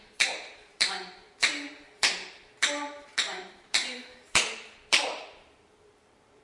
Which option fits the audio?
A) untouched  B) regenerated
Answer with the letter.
B